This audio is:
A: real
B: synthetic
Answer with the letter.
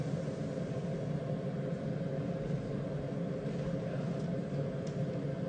A